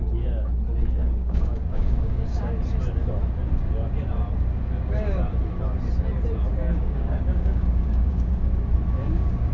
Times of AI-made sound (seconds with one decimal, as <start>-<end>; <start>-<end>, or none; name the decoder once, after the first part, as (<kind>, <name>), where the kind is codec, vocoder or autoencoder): 1.0-2.4 (codec, DAC); 6.5-8.3; 9.0-9.5